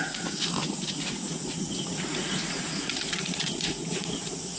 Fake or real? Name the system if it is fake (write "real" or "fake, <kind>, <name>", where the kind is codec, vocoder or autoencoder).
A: fake, vocoder, Vocos